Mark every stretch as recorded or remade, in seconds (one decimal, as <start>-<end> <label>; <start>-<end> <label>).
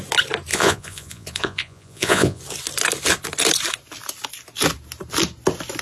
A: 0.0-0.5 recorded; 0.5-2.4 remade; 2.4-5.8 recorded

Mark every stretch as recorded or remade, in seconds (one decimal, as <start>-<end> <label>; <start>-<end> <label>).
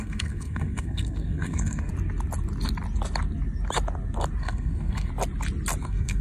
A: 0.0-1.9 remade; 1.9-4.4 recorded; 4.4-5.1 remade; 5.1-5.8 recorded; 5.8-6.2 remade